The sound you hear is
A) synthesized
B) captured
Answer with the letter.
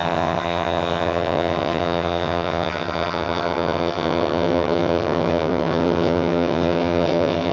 A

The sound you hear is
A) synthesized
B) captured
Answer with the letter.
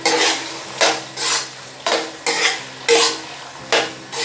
B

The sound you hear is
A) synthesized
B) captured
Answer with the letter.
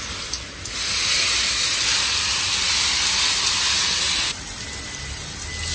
B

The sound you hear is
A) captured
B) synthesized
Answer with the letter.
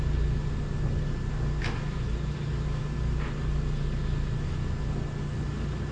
A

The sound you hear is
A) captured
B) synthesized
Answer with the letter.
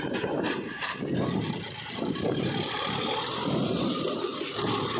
B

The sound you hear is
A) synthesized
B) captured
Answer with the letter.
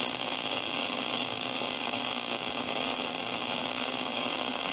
A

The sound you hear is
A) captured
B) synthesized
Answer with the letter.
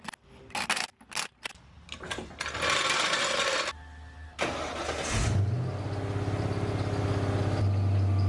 A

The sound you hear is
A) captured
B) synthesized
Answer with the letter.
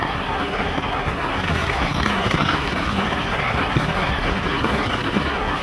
B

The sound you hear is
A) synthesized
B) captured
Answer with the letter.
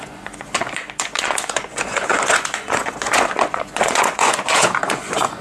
A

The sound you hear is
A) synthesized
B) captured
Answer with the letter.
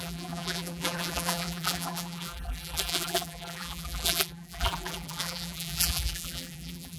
A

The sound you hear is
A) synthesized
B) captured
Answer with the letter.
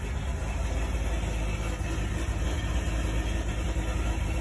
B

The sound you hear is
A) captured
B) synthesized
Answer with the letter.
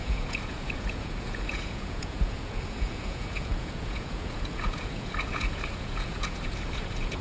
B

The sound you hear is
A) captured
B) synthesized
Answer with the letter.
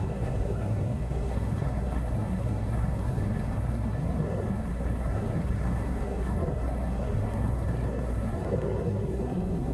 B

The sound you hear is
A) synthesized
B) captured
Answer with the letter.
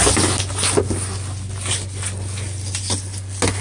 B